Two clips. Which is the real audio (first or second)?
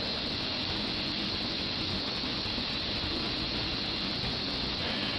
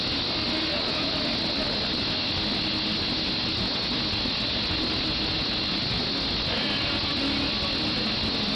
second